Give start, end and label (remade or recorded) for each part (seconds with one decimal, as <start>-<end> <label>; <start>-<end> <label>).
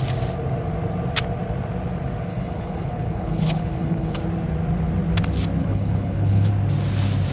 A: 0.0-2.3 recorded; 2.3-4.2 remade; 4.2-5.6 recorded; 5.6-6.5 remade; 6.5-7.3 recorded